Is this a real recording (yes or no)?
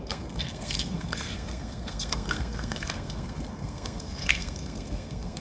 no